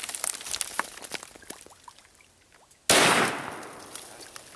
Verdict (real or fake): real